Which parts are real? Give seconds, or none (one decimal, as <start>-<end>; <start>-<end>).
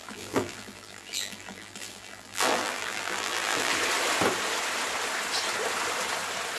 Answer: 3.7-6.6